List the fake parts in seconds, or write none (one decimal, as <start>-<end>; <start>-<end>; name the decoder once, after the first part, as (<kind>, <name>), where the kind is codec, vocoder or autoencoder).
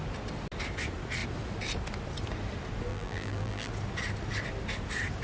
2.9-3.7 (vocoder, BigVGAN v2)